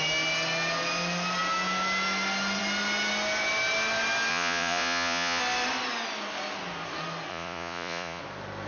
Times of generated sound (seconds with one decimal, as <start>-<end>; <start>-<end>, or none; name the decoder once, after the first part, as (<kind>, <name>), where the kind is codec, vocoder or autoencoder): 4.3-5.4 (vocoder, Vocos); 7.3-8.2